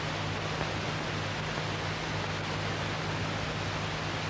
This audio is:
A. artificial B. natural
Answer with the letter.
B